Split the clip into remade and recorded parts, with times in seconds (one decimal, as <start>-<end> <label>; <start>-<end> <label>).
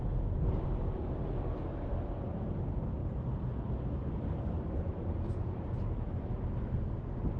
0.0-7.4 recorded